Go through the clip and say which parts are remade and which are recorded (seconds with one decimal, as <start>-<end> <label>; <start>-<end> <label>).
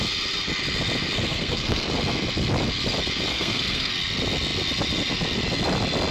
0.0-1.3 recorded; 1.3-1.9 remade; 1.9-3.3 recorded; 3.3-3.9 remade; 3.9-6.1 recorded